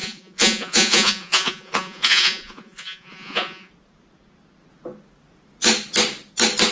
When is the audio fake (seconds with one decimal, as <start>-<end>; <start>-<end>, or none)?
0.0-3.7